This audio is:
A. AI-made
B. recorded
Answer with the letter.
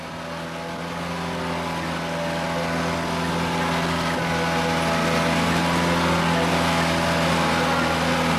B